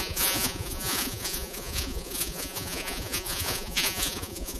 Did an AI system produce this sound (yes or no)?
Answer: yes